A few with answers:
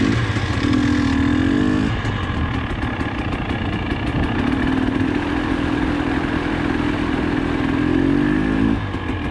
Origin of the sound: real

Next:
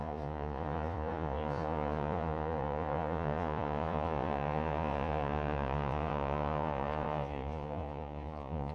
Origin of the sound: fake